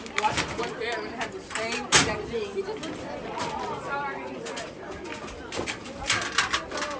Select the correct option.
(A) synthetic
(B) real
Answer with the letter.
B